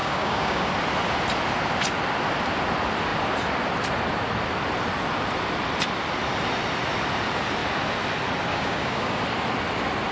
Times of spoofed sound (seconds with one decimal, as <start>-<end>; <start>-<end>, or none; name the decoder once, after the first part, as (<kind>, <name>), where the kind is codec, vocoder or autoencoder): 0.0-0.7 (codec, DAC); 8.5-9.2